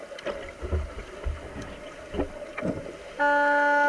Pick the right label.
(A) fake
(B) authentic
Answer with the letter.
B